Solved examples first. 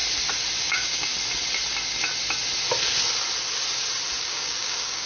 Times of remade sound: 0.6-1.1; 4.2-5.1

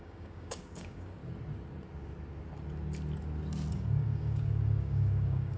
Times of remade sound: 0.0-1.2; 3.7-5.6

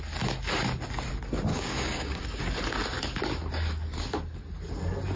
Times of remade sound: 1.5-2.4

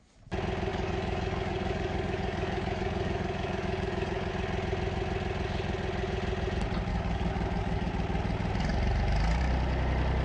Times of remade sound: 0.7-4.3; 6.9-7.9

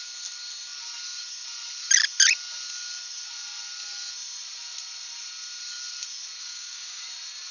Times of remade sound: 6.4-7.0

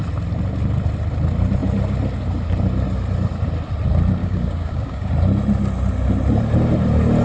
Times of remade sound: 4.2-5.1

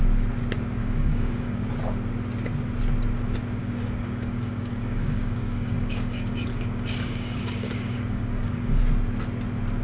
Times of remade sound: 0.8-1.7; 3.6-8.8

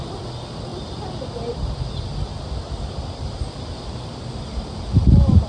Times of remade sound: none